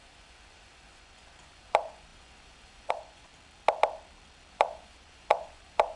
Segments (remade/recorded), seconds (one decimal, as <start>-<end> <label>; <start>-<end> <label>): 0.0-3.3 remade; 3.3-4.5 recorded; 4.5-6.0 remade